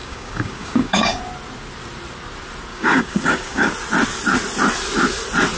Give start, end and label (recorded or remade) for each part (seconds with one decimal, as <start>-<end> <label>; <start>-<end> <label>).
0.0-1.2 remade; 1.2-2.7 recorded; 2.7-3.7 remade; 3.7-5.6 recorded